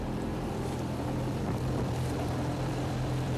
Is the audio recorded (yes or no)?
no